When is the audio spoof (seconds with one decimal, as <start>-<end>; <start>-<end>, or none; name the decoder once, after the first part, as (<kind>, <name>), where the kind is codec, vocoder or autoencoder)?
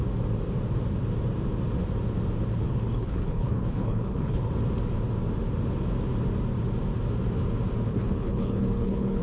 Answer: 2.5-4.5 (codec, HILCodec); 7.9-9.2